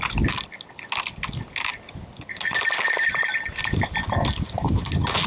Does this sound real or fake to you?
real